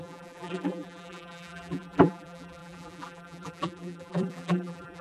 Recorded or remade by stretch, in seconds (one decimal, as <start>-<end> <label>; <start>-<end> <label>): 0.0-5.0 remade